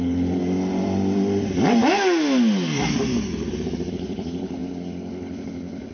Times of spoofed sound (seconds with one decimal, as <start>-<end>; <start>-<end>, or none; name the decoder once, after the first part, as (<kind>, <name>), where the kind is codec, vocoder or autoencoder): 0.0-0.4 (codec, HILCodec); 3.9-5.9